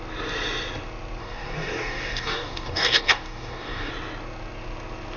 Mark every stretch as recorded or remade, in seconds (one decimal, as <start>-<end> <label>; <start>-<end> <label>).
0.0-1.2 recorded; 1.2-3.9 remade; 3.9-5.2 recorded